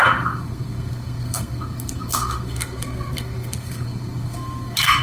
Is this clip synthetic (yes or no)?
yes